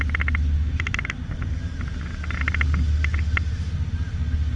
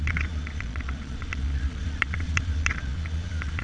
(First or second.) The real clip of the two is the first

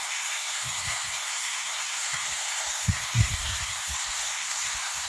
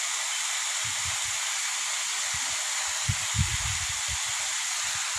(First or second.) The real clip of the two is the second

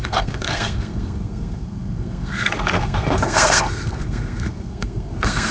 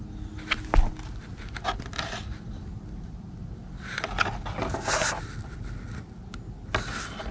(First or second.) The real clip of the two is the second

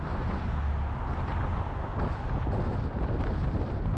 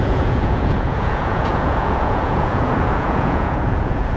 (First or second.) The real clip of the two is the first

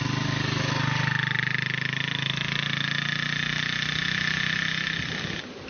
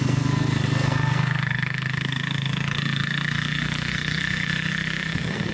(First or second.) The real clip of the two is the first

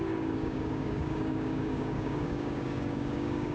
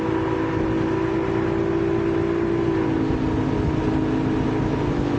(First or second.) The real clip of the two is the second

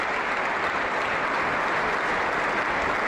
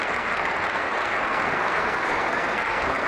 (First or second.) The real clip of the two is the first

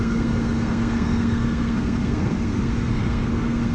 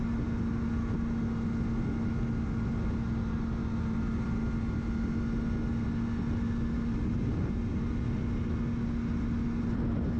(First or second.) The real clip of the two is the second